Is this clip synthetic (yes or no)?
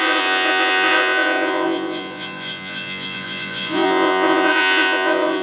yes